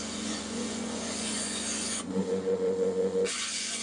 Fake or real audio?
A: fake